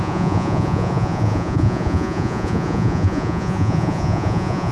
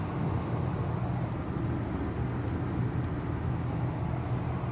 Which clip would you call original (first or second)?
second